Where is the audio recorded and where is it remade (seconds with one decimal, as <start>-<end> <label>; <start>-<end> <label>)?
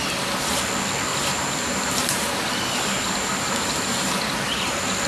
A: 0.0-1.1 recorded; 1.1-4.2 remade; 4.2-5.1 recorded